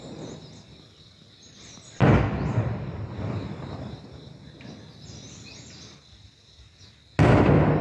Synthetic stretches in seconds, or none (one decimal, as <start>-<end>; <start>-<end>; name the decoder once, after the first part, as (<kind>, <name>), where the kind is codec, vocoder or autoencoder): none